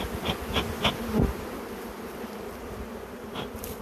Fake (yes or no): yes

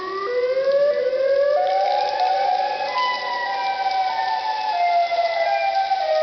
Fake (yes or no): no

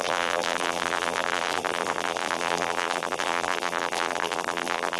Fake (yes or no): yes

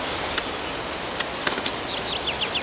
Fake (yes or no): no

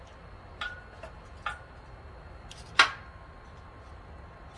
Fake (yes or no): no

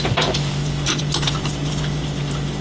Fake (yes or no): yes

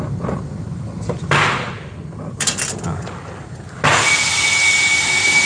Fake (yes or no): no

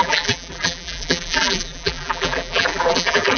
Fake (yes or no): yes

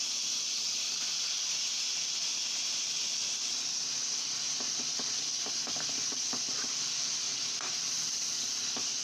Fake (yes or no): yes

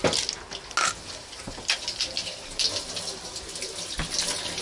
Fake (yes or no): no